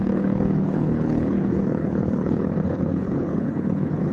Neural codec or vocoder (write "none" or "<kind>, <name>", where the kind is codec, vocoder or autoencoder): codec, HILCodec